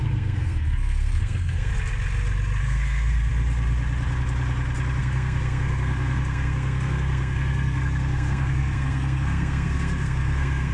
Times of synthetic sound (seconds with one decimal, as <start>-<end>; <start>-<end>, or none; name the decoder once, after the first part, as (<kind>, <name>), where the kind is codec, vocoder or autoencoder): 0.0-1.7 (codec, SNAC); 2.6-3.3; 5.0-10.7